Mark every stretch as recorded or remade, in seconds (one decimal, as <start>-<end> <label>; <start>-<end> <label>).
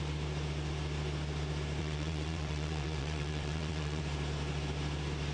0.0-1.8 recorded; 1.8-4.0 remade; 4.0-5.3 recorded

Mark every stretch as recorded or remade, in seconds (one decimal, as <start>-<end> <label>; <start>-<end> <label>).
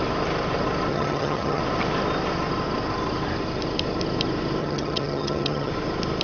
0.0-0.9 recorded; 0.9-1.6 remade; 1.6-4.6 recorded; 4.6-5.7 remade; 5.7-6.2 recorded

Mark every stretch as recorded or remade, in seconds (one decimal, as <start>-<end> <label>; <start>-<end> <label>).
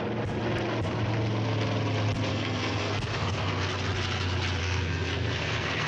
0.0-2.3 recorded; 2.3-3.7 remade; 3.7-4.6 recorded; 4.6-5.9 remade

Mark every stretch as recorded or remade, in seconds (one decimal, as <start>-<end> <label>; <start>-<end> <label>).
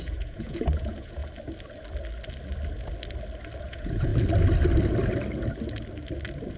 0.0-1.2 remade; 1.2-3.6 recorded; 3.6-4.1 remade; 4.1-6.6 recorded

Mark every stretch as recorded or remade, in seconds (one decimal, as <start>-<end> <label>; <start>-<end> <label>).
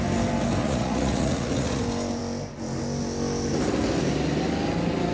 0.0-0.6 recorded; 0.6-1.8 remade; 1.8-5.1 recorded